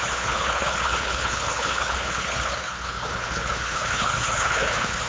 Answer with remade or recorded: remade